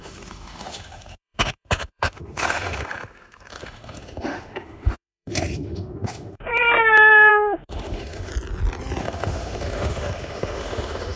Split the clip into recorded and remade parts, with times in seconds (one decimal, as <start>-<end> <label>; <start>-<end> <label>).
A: 0.0-6.5 remade; 6.5-7.3 recorded; 7.3-8.3 remade; 8.3-9.0 recorded; 9.0-11.2 remade